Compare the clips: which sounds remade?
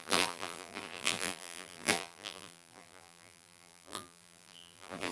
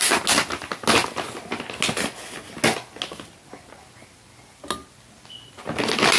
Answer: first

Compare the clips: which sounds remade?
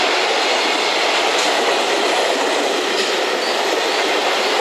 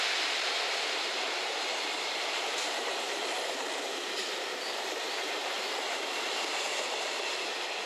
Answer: second